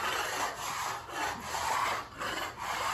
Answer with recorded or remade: recorded